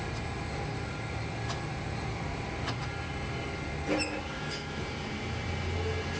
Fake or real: real